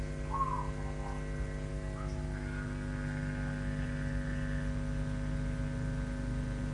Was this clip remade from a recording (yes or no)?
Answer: no